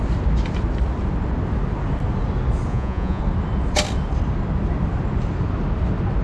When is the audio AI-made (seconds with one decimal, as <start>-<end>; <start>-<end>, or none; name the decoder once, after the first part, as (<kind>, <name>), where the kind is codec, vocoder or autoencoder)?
2.7-3.2 (vocoder, Vocos)